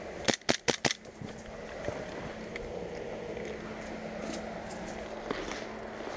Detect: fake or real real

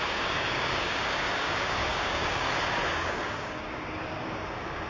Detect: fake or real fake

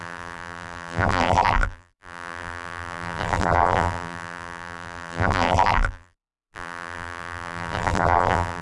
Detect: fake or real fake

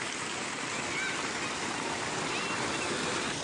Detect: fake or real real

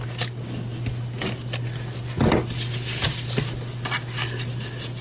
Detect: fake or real real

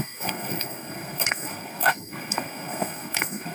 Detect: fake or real fake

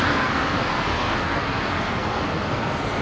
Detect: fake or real fake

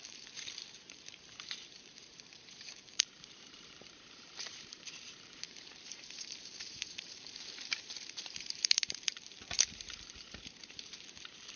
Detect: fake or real fake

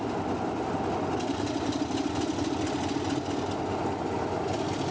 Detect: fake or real real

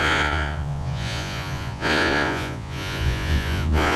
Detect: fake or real fake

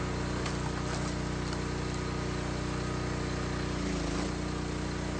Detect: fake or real real